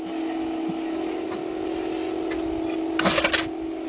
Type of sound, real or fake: real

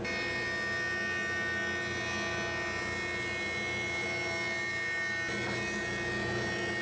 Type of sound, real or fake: real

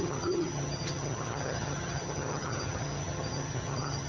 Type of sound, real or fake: fake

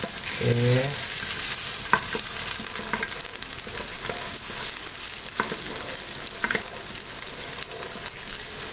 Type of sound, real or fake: real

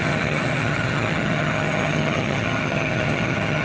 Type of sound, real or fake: fake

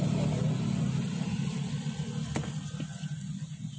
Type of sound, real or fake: real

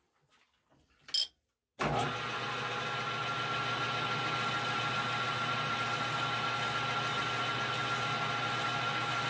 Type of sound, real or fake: real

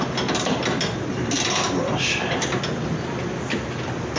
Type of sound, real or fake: real